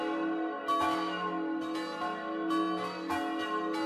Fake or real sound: real